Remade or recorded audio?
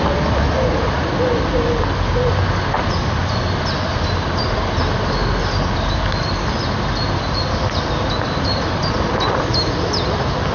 recorded